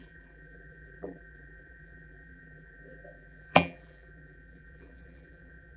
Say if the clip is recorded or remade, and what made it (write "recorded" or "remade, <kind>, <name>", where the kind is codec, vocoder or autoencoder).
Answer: remade, vocoder, BigVGAN v2